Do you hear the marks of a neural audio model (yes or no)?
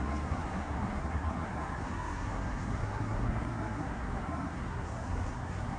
yes